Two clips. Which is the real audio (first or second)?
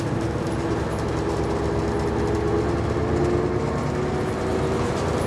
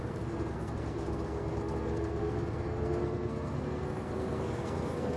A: first